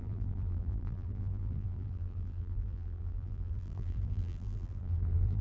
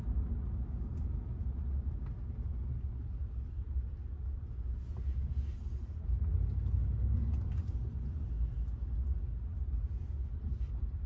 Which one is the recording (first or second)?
second